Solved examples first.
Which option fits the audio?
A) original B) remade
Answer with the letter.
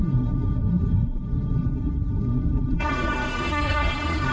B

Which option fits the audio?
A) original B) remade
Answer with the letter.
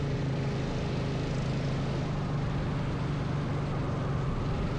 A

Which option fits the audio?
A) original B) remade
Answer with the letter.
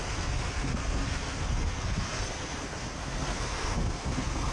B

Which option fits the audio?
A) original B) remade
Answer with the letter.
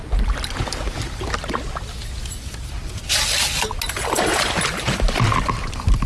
A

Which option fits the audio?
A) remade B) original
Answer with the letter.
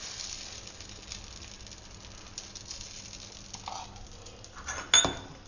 B